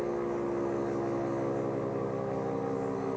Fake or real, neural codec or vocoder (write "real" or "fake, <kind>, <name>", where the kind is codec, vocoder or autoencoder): real